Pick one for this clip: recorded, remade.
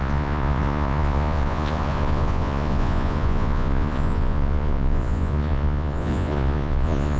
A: remade